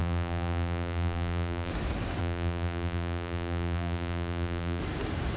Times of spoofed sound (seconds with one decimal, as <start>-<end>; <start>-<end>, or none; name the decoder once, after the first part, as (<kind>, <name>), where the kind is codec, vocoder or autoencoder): 0.0-1.7 (vocoder, BigVGAN v2); 2.2-4.8